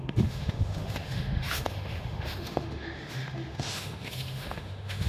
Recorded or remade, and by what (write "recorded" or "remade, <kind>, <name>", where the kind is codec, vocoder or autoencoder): remade, autoencoder, DAC-VAE